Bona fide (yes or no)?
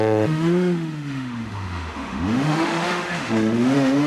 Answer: no